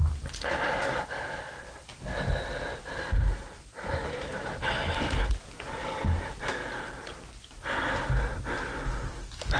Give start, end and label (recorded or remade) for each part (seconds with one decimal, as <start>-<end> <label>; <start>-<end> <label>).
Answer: 0.0-2.7 recorded; 2.7-4.9 remade; 4.9-9.6 recorded